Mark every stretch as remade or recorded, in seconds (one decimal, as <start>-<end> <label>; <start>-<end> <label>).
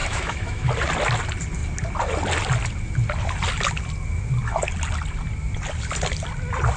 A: 0.0-0.7 remade; 0.7-6.8 recorded